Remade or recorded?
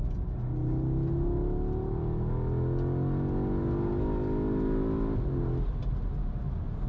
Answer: recorded